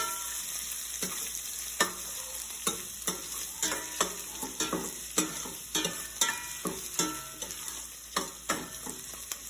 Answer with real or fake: real